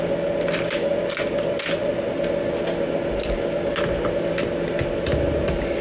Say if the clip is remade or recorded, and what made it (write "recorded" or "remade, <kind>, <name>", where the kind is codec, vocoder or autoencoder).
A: recorded